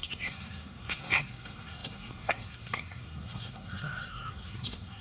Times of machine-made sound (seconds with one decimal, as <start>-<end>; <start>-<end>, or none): 0.0-5.0